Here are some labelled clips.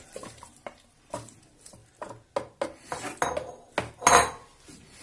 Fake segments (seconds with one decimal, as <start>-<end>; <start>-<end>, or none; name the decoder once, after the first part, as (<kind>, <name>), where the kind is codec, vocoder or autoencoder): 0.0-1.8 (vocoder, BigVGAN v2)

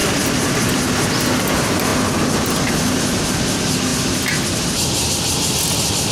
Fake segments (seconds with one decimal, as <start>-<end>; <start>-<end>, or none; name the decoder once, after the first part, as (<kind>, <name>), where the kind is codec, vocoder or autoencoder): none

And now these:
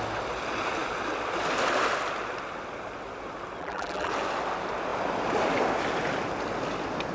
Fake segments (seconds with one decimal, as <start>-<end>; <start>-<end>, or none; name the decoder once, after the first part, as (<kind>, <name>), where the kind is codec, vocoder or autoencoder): 3.6-4.1 (vocoder, BigVGAN v2)

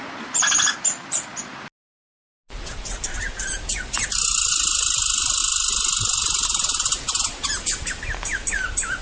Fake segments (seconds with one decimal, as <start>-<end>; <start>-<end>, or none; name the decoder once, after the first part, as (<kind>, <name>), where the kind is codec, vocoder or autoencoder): none

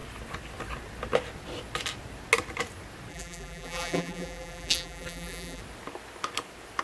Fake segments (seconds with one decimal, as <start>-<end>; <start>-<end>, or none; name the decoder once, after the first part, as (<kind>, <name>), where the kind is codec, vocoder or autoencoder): 3.1-5.6 (vocoder, BigVGAN v2)